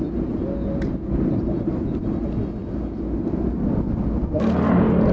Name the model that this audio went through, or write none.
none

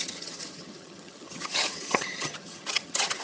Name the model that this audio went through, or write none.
vocoder, HiFi-GAN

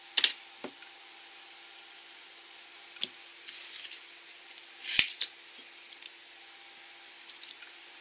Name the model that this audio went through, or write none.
none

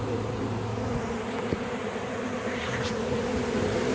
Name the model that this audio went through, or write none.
none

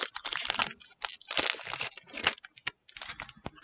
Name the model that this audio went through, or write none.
none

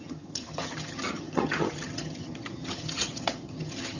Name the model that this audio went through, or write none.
vocoder, HiFi-GAN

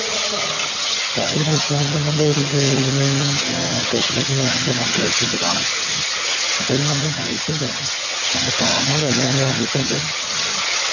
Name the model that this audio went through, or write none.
vocoder, HiFi-GAN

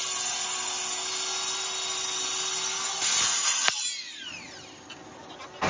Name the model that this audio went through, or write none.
none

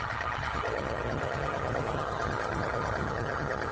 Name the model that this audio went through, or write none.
vocoder, HiFi-GAN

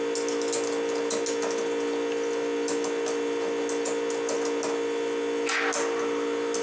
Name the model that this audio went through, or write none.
none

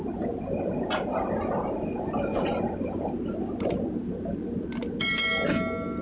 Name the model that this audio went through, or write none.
none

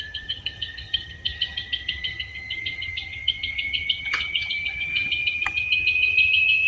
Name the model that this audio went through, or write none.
vocoder, HiFi-GAN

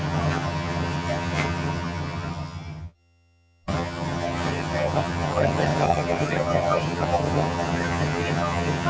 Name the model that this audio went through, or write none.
vocoder, HiFi-GAN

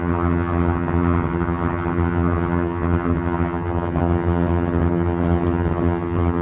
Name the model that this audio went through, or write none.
vocoder, HiFi-GAN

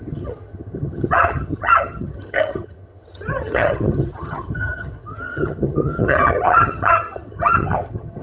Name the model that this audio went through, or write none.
vocoder, HiFi-GAN